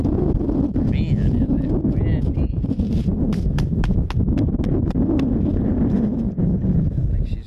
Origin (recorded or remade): recorded